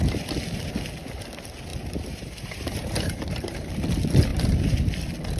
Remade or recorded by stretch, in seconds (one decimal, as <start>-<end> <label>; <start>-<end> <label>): 0.0-1.7 recorded; 1.7-3.7 remade; 3.7-4.3 recorded; 4.3-4.8 remade; 4.8-5.4 recorded

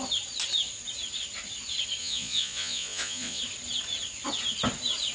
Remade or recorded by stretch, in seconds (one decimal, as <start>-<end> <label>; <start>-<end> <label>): 0.0-2.0 recorded; 2.0-3.4 remade; 3.4-5.1 recorded

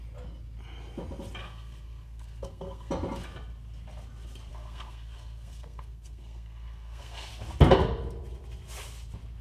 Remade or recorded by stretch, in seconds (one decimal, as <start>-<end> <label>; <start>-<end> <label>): 0.0-1.4 recorded; 1.4-2.9 remade; 2.9-4.5 recorded; 4.5-7.3 remade; 7.3-9.4 recorded

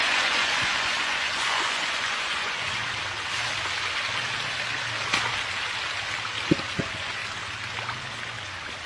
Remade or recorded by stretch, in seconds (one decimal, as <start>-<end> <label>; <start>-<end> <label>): 0.0-2.8 remade; 2.8-6.6 recorded; 6.6-7.2 remade; 7.2-8.9 recorded